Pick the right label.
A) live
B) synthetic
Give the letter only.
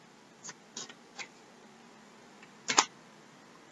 A